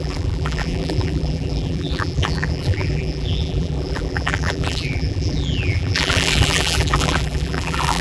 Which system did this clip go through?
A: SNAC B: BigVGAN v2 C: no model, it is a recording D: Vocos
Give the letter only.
B